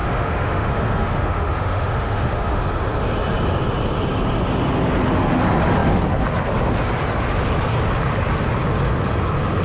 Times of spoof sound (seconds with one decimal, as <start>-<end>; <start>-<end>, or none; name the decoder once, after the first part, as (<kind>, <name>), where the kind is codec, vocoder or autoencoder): 0.0-2.6 (autoencoder, DAC-VAE)